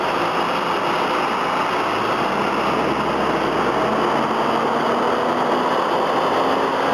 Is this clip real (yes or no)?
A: yes